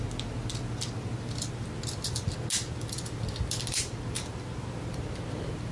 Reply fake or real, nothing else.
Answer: real